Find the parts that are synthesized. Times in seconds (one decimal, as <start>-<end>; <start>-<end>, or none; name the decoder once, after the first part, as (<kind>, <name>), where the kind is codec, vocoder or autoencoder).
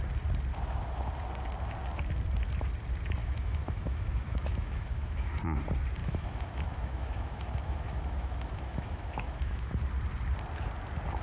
0.5-1.1 (autoencoder, DAC-VAE); 3.2-5.4; 6.0-9.8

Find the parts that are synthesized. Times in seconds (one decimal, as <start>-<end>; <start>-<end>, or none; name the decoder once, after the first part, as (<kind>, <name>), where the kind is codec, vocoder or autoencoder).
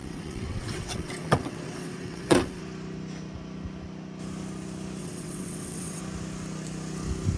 0.0-2.6 (vocoder, WaveNeXt); 5.0-6.0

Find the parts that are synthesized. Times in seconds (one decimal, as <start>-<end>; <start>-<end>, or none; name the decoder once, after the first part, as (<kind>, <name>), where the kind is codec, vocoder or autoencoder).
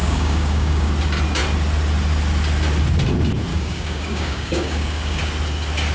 0.0-0.9 (codec, DAC); 3.5-5.2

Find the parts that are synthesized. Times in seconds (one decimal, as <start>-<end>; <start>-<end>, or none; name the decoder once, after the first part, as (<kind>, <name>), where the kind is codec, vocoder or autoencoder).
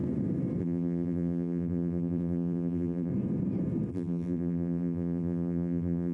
0.6-3.1 (vocoder, BigVGAN v2); 3.9-6.1